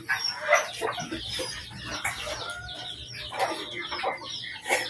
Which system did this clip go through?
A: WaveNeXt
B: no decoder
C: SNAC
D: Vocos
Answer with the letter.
B